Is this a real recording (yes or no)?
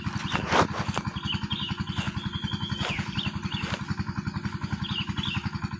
yes